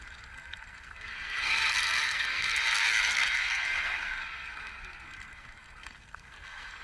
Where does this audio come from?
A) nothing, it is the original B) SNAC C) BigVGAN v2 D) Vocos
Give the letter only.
B